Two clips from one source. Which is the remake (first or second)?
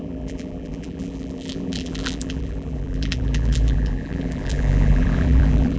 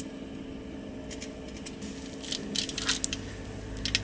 first